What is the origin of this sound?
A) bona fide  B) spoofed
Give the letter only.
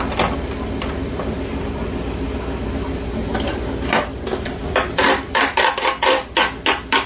A